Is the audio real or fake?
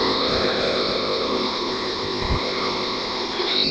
fake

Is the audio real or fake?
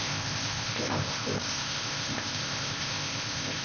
fake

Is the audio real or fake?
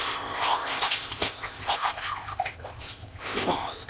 fake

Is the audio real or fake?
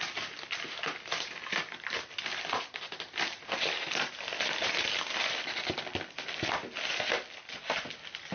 real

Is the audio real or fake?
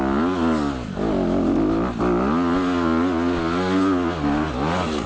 real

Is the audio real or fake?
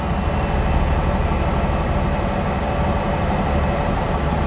real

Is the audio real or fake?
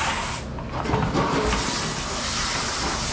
real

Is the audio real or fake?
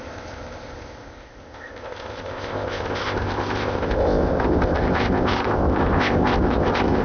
fake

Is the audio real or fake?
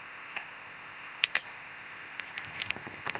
fake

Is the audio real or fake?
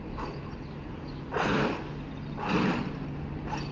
real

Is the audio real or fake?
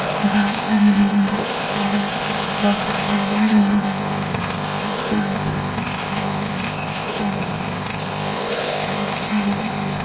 fake